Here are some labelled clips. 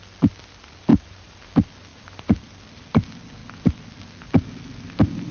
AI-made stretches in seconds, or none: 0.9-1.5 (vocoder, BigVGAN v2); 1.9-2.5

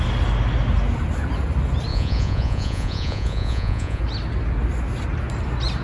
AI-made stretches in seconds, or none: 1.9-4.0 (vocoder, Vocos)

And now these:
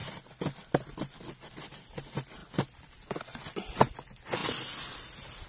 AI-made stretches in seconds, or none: none

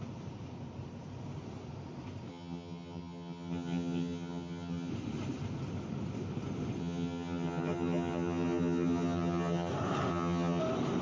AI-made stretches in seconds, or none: 2.3-4.9 (vocoder, HiFi-GAN); 6.8-9.7; 10.1-10.6